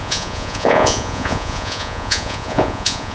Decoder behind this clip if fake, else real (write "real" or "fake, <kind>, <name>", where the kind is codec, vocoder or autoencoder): fake, vocoder, Vocos